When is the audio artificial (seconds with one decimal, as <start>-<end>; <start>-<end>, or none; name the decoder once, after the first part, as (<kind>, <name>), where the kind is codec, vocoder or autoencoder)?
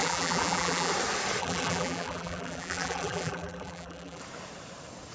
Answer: 0.0-0.9 (vocoder, BigVGAN v2); 1.4-4.2